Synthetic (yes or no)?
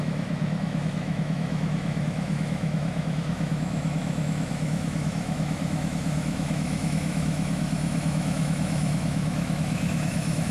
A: yes